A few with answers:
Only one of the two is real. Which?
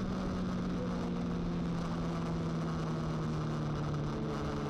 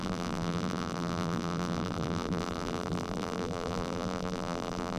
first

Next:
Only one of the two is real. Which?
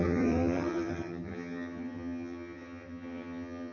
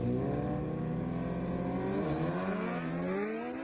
second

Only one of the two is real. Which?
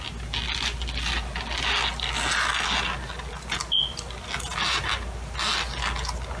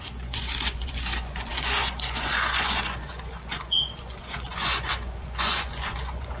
first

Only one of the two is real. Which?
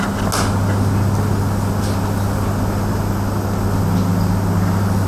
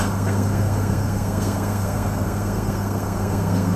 first